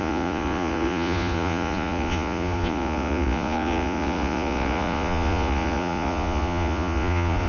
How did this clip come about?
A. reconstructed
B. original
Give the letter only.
A